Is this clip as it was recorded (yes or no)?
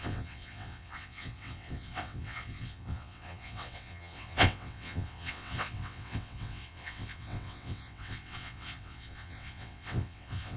no